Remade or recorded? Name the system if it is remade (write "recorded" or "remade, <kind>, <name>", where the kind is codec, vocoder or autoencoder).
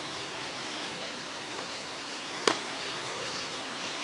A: remade, codec, SNAC